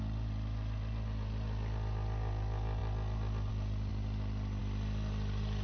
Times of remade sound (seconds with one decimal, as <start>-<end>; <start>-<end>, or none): none